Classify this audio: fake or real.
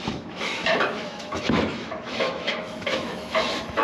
fake